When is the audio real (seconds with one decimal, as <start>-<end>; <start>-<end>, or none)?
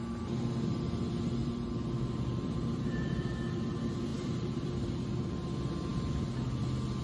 0.0-1.4; 3.3-4.1; 5.3-7.0